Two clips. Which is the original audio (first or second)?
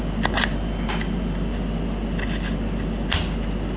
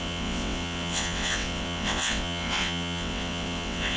first